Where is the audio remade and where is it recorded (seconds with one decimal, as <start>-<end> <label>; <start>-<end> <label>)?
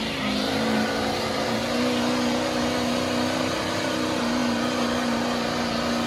0.0-1.6 remade; 1.6-3.4 recorded; 3.4-4.4 remade; 4.4-6.1 recorded